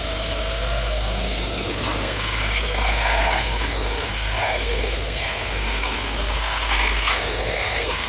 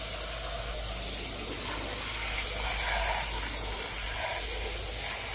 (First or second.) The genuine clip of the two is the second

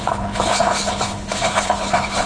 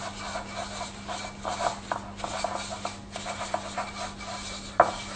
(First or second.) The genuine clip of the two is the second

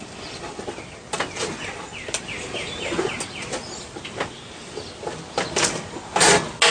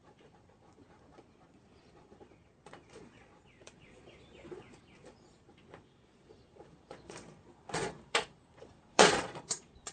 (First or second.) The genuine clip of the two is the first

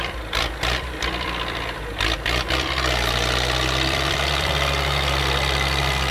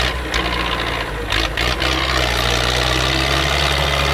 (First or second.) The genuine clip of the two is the second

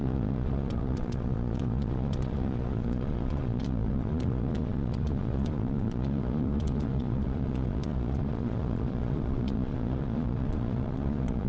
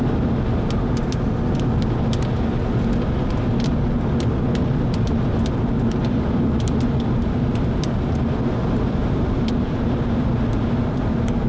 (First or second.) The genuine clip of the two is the second